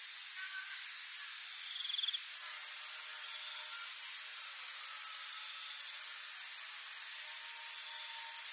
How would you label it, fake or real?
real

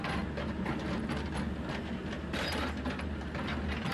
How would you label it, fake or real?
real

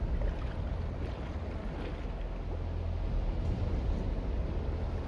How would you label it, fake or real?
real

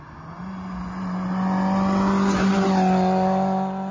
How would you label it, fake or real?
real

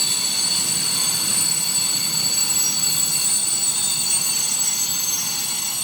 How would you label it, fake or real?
real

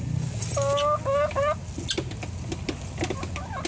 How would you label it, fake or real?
real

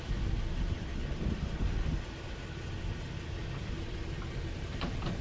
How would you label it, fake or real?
real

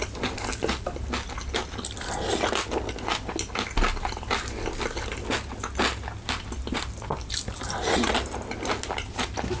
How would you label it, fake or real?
real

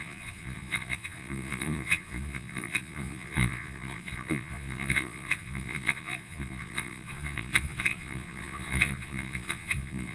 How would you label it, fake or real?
fake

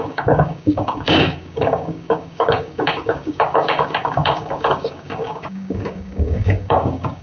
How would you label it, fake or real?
fake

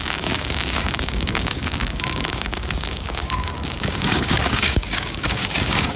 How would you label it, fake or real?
fake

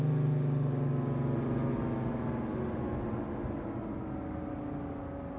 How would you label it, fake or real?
real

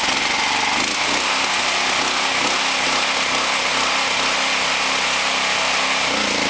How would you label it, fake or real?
real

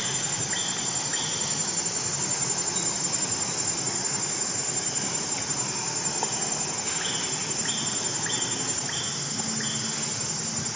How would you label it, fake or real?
real